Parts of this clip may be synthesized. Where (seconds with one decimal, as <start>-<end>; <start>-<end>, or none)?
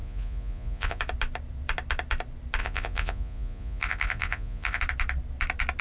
0.0-1.0; 2.6-4.8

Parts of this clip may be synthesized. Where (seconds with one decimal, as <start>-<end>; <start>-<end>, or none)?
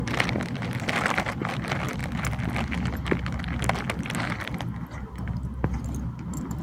none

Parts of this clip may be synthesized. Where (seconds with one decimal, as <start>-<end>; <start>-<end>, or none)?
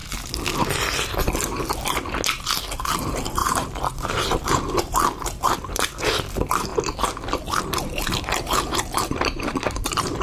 2.9-6.7; 7.6-10.2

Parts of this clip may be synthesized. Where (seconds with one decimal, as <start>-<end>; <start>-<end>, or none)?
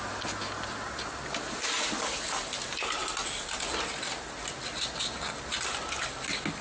none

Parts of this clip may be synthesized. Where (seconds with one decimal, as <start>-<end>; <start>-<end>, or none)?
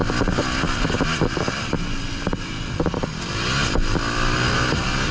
none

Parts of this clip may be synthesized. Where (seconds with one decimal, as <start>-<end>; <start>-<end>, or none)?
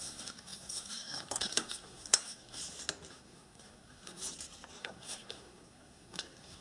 0.0-2.6; 3.1-4.2; 4.8-6.6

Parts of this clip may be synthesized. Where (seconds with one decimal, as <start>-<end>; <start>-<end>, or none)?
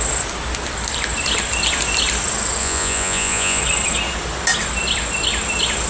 2.6-3.6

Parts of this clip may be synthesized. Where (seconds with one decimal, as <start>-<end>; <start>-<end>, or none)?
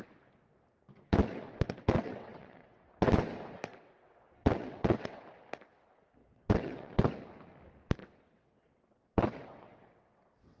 1.2-3.1; 3.7-5.2; 6.2-7.1; 8.0-10.6